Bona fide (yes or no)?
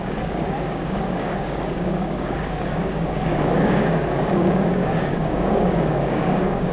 no